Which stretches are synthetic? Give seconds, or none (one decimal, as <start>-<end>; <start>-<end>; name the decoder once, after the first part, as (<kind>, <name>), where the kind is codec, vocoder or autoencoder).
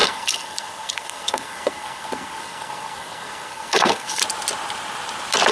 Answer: 0.0-4.2 (codec, SNAC)